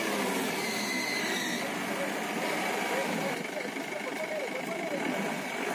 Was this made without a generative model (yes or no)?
yes